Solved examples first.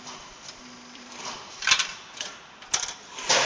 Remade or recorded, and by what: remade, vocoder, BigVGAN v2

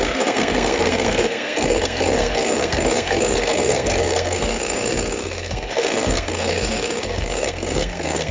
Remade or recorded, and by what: remade, codec, SNAC